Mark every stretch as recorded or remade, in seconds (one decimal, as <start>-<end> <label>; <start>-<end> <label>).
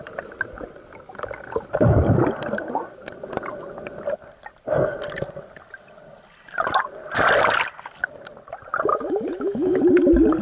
0.0-8.9 recorded; 8.9-9.8 remade; 9.8-10.4 recorded